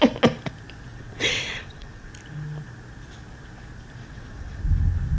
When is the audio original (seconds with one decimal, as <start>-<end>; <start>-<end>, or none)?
0.0-0.9; 2.1-4.0; 4.6-5.2